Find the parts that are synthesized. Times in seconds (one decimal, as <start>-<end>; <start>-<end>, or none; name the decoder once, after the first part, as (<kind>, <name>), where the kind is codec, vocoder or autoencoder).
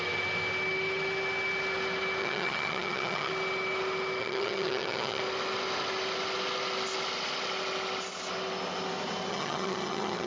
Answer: 2.2-3.3 (vocoder, HiFi-GAN); 4.2-5.2; 9.3-10.3